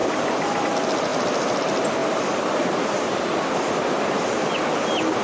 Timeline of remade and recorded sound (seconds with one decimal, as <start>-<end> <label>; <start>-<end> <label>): 0.0-5.2 recorded

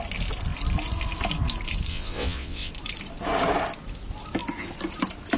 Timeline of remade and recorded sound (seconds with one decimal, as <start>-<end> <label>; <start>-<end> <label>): 0.0-1.9 recorded; 1.9-2.7 remade; 2.7-5.4 recorded

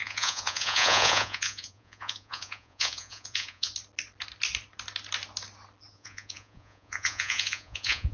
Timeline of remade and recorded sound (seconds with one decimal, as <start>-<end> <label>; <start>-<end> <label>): 0.0-3.7 remade; 3.7-5.9 recorded; 5.9-8.1 remade

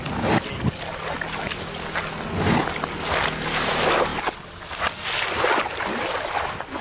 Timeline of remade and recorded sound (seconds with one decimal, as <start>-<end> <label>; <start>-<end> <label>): 0.0-6.8 recorded